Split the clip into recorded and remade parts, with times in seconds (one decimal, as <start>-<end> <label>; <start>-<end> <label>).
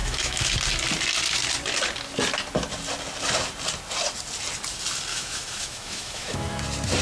0.0-0.5 remade; 0.5-5.1 recorded; 5.1-6.6 remade; 6.6-7.0 recorded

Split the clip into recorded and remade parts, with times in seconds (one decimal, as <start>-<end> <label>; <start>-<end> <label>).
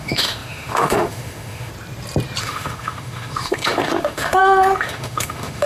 0.0-1.7 remade; 1.7-2.4 recorded; 2.4-5.7 remade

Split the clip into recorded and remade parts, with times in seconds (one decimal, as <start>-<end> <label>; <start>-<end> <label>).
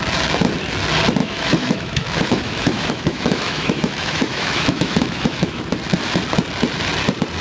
0.0-1.2 recorded; 1.2-5.6 remade; 5.6-7.4 recorded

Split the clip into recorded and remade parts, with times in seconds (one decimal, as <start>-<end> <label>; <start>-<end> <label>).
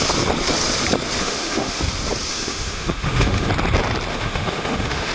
0.0-1.2 recorded; 1.2-1.8 remade; 1.8-2.3 recorded; 2.3-3.5 remade; 3.5-4.1 recorded; 4.1-5.1 remade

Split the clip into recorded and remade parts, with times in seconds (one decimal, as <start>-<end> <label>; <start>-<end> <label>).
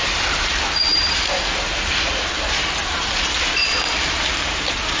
0.0-5.0 recorded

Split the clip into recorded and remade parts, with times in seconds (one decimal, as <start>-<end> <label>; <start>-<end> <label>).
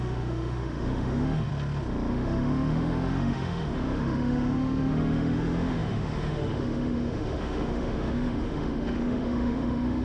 0.0-1.5 remade; 1.5-2.1 recorded; 2.1-10.0 remade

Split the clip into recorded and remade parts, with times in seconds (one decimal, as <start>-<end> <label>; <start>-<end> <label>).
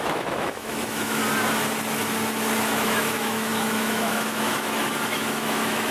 0.0-1.2 remade; 1.2-2.6 recorded; 2.6-5.9 remade